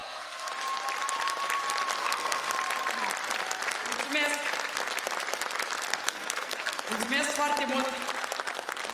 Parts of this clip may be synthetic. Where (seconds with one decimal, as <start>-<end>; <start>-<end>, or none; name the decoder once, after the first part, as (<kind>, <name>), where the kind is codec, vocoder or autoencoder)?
0.0-0.5 (codec, SNAC); 2.0-2.5; 5.9-6.9